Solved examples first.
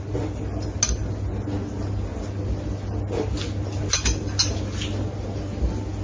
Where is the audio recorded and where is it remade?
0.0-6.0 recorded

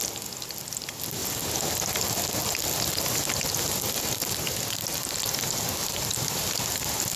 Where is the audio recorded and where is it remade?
0.0-7.2 recorded

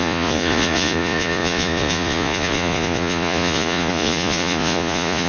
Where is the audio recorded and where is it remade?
0.0-5.3 remade

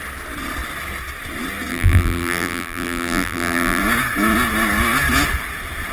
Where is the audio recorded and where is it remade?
0.0-1.7 recorded; 1.7-3.8 remade; 3.8-5.9 recorded

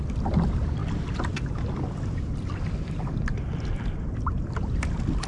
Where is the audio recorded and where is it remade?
0.0-5.3 recorded

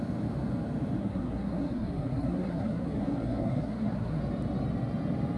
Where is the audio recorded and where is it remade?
0.0-1.0 recorded; 1.0-4.2 remade; 4.2-5.4 recorded

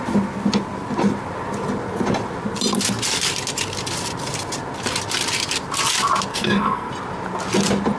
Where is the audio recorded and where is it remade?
0.0-6.3 recorded; 6.3-6.9 remade; 6.9-8.0 recorded

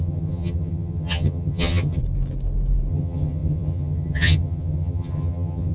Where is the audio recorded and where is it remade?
0.0-2.0 remade; 2.0-2.9 recorded; 2.9-5.7 remade